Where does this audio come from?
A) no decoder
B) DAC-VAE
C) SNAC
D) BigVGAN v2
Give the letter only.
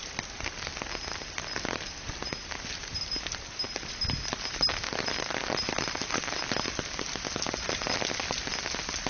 A